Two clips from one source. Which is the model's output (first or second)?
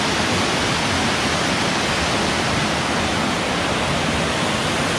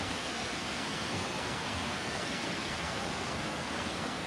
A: second